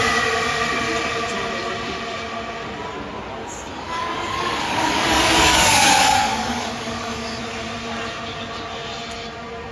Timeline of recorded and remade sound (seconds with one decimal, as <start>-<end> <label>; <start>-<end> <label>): 0.0-3.7 recorded; 3.7-7.4 remade; 7.4-9.7 recorded